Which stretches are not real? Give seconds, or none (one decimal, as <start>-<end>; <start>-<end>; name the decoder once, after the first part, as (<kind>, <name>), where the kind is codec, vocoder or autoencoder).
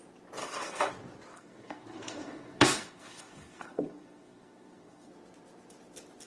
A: 0.4-0.9 (codec, SNAC); 1.3-5.1